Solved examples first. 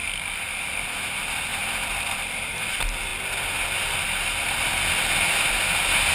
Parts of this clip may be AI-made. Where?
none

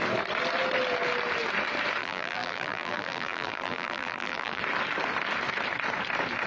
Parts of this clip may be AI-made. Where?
2.0-4.6 (vocoder, BigVGAN v2)

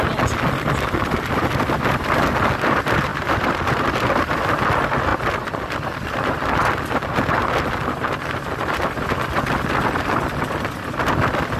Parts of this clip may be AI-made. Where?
3.1-4.5 (vocoder, BigVGAN v2); 5.1-9.7

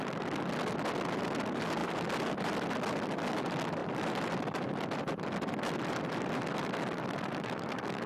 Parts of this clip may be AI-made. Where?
1.8-2.7 (vocoder, BigVGAN v2); 3.8-7.3

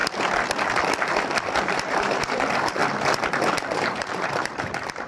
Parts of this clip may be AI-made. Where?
1.6-2.8 (vocoder, BigVGAN v2); 3.5-5.1

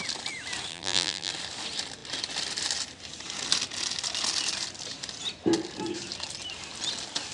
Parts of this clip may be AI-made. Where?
0.7-1.3 (vocoder, BigVGAN v2)

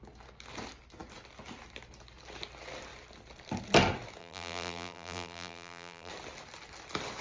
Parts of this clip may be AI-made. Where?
4.2-6.1 (vocoder, BigVGAN v2)

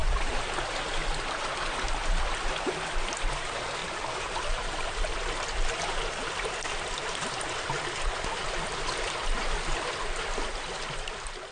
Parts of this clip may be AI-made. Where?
0.0-0.5 (vocoder, BigVGAN v2); 3.8-5.1